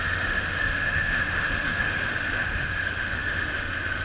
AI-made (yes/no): yes